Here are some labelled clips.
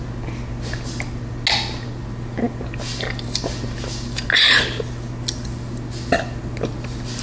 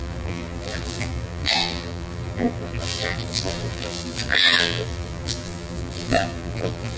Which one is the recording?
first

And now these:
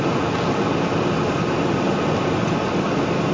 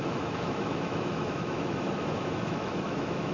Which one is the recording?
first